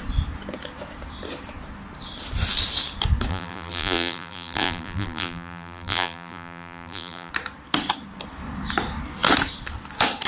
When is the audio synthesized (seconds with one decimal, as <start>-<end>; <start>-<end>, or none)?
3.3-7.3